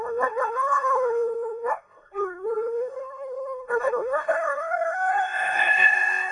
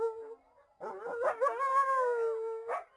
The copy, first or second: first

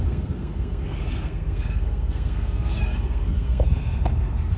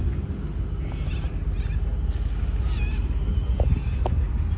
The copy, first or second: first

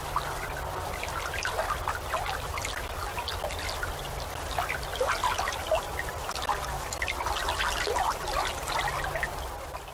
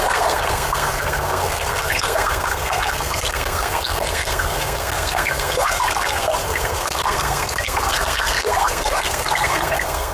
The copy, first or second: second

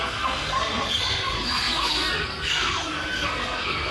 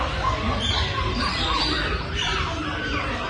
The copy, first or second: first